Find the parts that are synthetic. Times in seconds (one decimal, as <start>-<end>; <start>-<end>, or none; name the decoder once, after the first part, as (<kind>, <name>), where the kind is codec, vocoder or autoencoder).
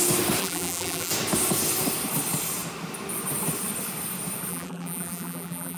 0.4-1.1 (vocoder, BigVGAN v2); 4.5-5.8